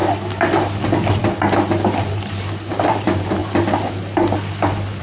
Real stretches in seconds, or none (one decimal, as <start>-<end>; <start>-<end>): 0.0-2.4; 3.4-5.0